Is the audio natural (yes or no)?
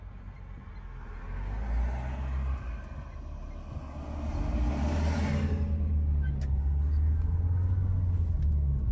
yes